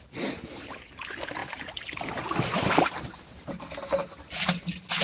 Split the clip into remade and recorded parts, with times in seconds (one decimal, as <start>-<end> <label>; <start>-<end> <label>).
0.0-5.0 recorded